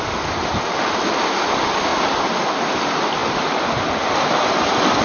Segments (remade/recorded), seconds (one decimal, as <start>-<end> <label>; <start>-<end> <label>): 0.0-5.0 recorded

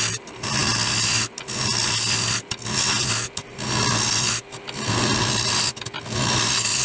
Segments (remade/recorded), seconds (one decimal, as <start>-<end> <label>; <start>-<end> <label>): 0.0-6.8 recorded

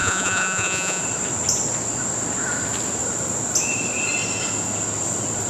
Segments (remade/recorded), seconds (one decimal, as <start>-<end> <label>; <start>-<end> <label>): 0.0-1.0 remade; 1.0-5.5 recorded

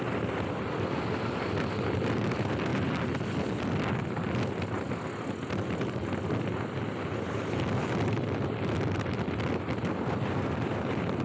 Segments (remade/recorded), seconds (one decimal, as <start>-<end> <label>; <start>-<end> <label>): 0.0-11.2 recorded